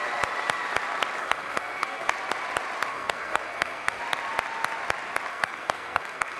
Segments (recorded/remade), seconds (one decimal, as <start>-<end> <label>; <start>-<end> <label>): 0.0-1.2 recorded; 1.2-2.1 remade; 2.1-2.9 recorded; 2.9-4.0 remade; 4.0-5.3 recorded; 5.3-6.4 remade